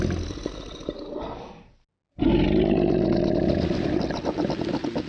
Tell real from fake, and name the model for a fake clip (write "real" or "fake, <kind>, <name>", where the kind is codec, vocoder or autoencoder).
real